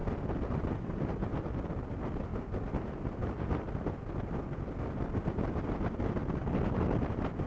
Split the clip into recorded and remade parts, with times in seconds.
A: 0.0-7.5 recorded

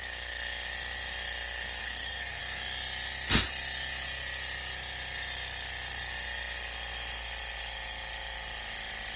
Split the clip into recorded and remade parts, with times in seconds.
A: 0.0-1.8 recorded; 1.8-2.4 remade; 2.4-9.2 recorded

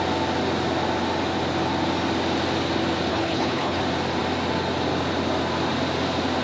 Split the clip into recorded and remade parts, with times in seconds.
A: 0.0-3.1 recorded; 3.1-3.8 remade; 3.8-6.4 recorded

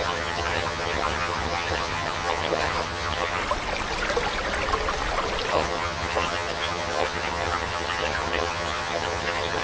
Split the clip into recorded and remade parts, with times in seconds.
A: 0.0-3.4 remade; 3.4-5.5 recorded; 5.5-9.6 remade

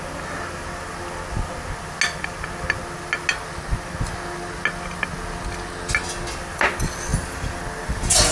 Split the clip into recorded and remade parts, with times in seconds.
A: 0.0-8.3 recorded

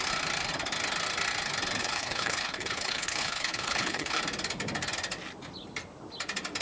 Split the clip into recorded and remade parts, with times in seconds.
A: 0.0-1.8 recorded; 1.8-4.2 remade; 4.2-6.6 recorded

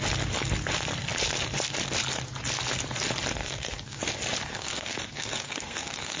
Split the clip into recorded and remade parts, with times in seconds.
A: 0.0-3.4 recorded; 3.4-4.0 remade; 4.0-4.5 recorded; 4.5-6.2 remade